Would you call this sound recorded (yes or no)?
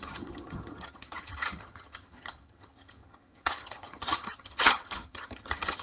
no